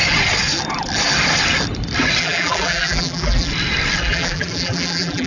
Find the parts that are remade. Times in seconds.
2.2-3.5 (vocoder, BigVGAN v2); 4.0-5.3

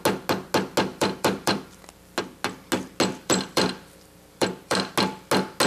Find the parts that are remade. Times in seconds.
0.9-1.8 (vocoder, BigVGAN v2); 3.1-4.9